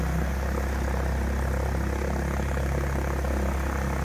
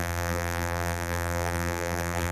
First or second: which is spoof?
second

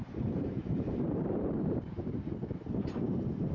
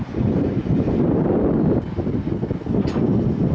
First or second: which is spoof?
first